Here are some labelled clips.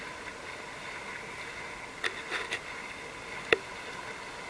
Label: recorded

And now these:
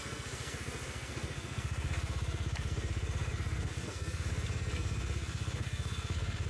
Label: remade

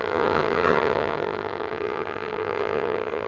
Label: remade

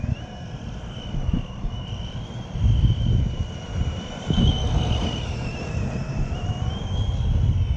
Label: recorded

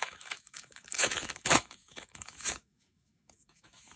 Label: remade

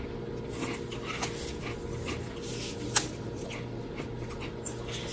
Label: recorded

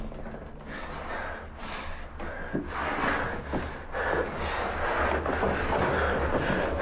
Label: recorded